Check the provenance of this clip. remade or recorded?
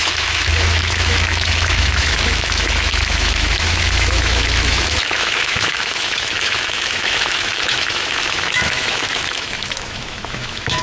remade